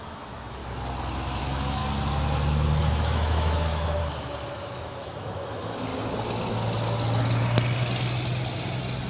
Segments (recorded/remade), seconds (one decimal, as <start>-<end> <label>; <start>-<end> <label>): 0.0-0.6 remade; 0.6-1.4 recorded; 1.4-1.8 remade; 1.8-2.9 recorded; 2.9-4.0 remade; 4.0-4.6 recorded; 4.6-5.9 remade; 5.9-9.1 recorded